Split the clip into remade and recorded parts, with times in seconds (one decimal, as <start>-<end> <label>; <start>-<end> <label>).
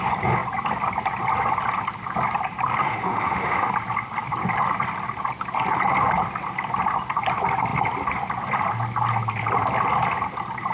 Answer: 0.0-2.8 recorded; 2.8-3.7 remade; 3.7-10.7 recorded